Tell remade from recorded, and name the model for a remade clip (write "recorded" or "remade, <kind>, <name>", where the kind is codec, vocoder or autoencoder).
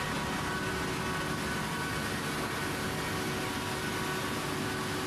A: recorded